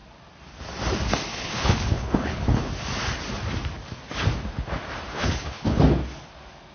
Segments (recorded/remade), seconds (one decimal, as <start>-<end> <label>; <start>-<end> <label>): 0.0-1.3 recorded; 1.3-2.7 remade; 2.7-5.1 recorded; 5.1-5.8 remade; 5.8-6.7 recorded